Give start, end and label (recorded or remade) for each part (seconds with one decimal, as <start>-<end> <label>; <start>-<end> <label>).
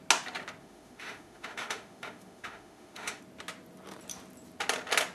0.0-0.6 recorded; 0.6-3.2 remade; 3.2-5.1 recorded